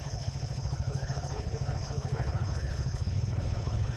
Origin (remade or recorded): remade